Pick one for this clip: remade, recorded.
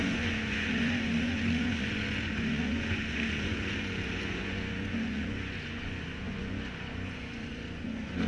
remade